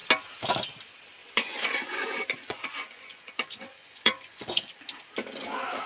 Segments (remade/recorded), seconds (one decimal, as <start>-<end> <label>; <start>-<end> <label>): 0.0-1.2 recorded; 1.2-4.7 remade; 4.7-5.9 recorded

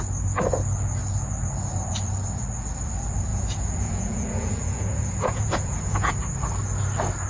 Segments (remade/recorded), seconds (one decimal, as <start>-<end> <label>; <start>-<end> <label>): 0.0-3.3 recorded; 3.3-6.1 remade; 6.1-7.3 recorded

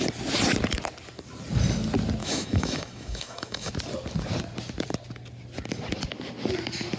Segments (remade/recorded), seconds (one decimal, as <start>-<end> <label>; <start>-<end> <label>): 0.0-2.2 recorded; 2.2-3.7 remade; 3.7-7.0 recorded

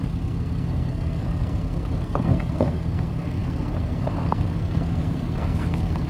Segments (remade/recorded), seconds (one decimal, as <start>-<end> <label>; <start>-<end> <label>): 0.0-6.1 remade

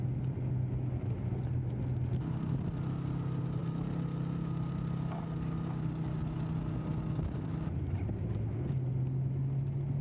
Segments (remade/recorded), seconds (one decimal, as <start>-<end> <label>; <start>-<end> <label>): 0.0-10.0 recorded

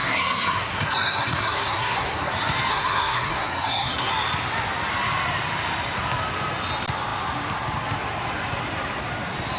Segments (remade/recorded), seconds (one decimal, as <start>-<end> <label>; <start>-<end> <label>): 0.0-2.3 remade; 2.3-2.7 recorded; 2.7-4.1 remade; 4.1-9.6 recorded